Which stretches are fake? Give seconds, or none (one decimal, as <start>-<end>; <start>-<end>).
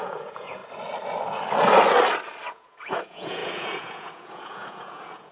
0.0-0.6; 2.5-5.3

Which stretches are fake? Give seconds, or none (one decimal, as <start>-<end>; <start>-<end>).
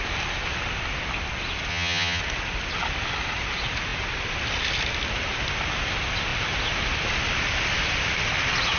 1.7-2.2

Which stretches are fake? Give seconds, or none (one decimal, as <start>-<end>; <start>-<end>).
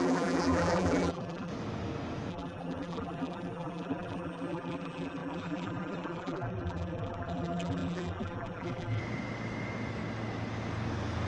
0.0-1.5; 2.3-9.0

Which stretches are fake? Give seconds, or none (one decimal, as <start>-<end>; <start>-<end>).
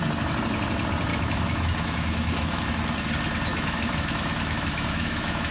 1.1-2.7; 3.5-5.5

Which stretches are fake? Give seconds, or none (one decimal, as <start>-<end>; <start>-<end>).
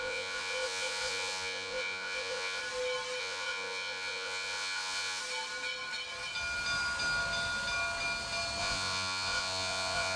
0.0-2.6; 3.2-5.2; 8.6-10.2